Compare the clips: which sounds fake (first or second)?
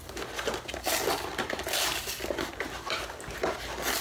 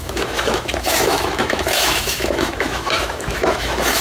second